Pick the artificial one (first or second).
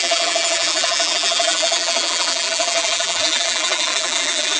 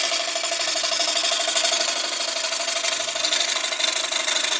first